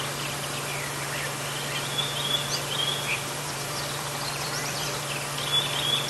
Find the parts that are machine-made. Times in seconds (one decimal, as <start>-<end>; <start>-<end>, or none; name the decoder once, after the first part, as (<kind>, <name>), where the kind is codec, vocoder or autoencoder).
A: 3.1-5.0 (vocoder, BigVGAN v2)